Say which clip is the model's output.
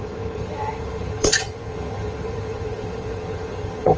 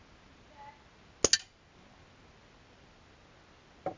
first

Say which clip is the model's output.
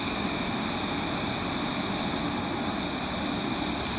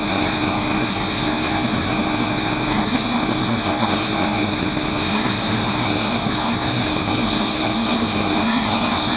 second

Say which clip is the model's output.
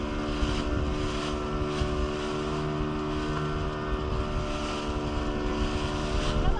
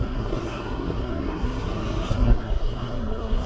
second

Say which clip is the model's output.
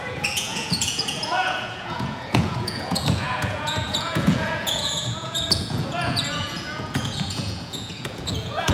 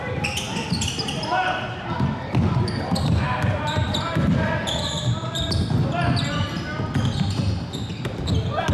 first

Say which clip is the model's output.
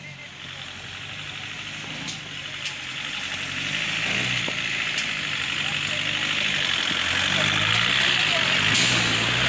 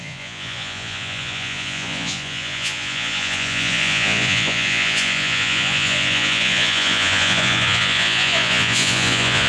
second